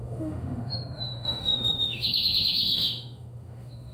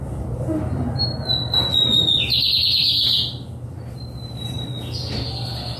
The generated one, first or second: first